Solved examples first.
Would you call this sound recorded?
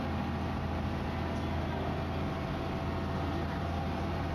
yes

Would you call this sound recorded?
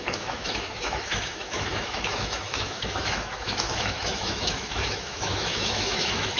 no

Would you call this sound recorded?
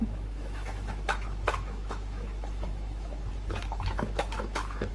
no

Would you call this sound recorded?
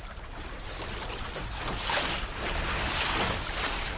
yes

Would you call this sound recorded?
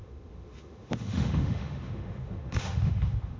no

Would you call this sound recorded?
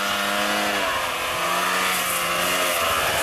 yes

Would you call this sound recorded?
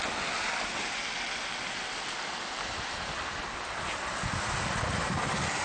yes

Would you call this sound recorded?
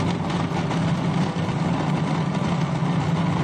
yes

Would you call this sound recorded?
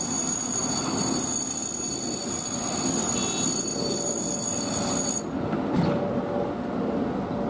yes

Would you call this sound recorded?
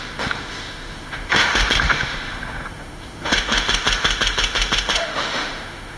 no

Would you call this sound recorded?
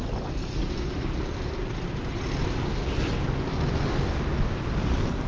yes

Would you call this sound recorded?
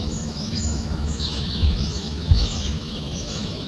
no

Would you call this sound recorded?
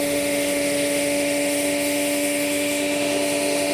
no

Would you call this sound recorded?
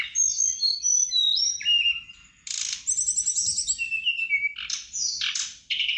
yes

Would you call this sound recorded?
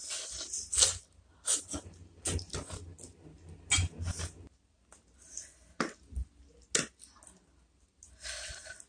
yes